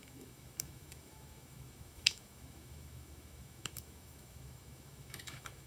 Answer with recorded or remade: remade